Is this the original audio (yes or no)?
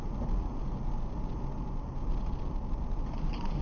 yes